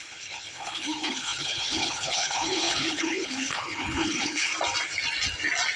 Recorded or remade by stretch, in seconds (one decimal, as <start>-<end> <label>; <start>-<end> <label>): 0.0-4.5 remade; 4.5-5.8 recorded